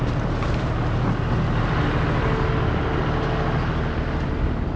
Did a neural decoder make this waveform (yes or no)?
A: no